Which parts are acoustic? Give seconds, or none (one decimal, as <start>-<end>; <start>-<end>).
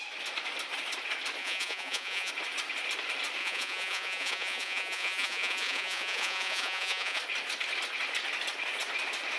0.0-1.4; 2.3-3.4; 7.2-9.4